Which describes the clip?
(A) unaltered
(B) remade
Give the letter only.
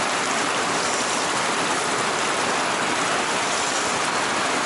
B